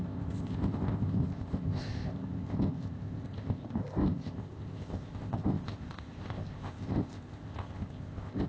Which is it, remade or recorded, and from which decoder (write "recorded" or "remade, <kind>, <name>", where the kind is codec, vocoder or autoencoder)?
remade, codec, ZipCodec